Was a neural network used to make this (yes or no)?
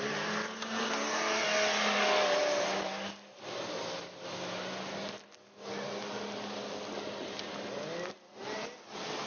no